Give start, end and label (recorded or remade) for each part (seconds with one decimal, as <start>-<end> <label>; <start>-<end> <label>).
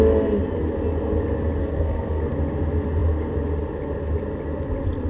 0.0-1.6 recorded; 1.6-2.3 remade; 2.3-5.1 recorded